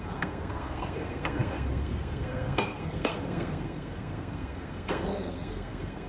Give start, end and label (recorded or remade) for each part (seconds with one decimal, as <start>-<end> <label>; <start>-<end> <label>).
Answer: 0.0-6.1 remade